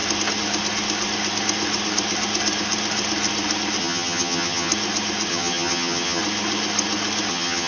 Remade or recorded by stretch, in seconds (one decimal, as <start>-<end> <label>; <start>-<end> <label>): 0.0-3.8 recorded; 3.8-4.7 remade; 4.7-5.3 recorded; 5.3-6.2 remade; 6.2-7.3 recorded; 7.3-7.7 remade